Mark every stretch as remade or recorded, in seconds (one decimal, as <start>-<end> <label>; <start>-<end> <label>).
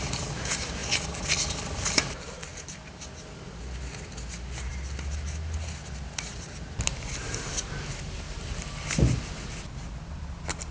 0.0-10.7 recorded